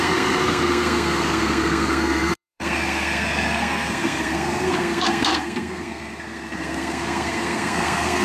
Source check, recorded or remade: remade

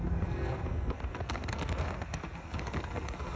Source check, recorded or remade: remade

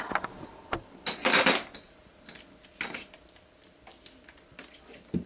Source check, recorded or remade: recorded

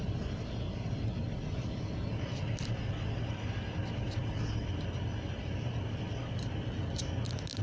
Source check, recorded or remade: recorded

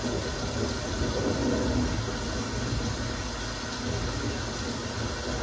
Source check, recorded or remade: recorded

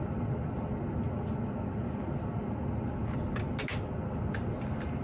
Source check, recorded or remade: recorded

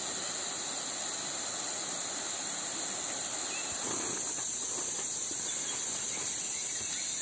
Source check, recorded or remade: recorded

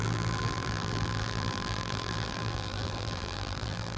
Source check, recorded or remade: remade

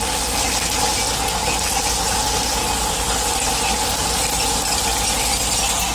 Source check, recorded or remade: recorded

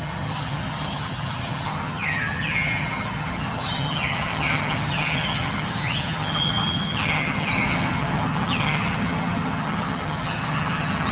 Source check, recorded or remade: remade